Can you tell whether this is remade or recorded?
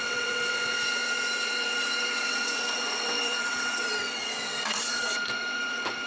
remade